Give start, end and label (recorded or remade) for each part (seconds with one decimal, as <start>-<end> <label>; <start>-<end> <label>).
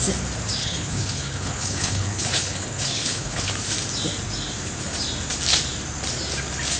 0.0-0.6 recorded; 0.6-3.5 remade; 3.5-6.8 recorded